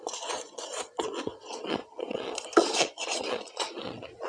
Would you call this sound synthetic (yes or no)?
yes